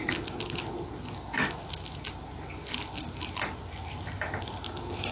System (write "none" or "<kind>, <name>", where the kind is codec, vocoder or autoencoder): none